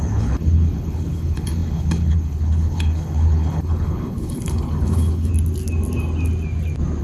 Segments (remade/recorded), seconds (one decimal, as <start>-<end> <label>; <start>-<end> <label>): 0.0-5.3 remade; 5.3-7.0 recorded